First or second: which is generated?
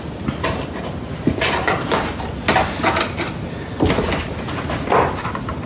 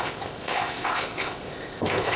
second